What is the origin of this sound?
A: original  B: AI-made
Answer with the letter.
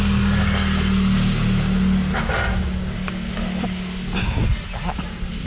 A